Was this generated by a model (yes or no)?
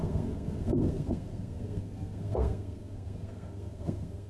yes